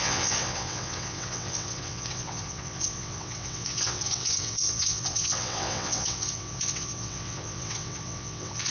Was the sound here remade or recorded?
remade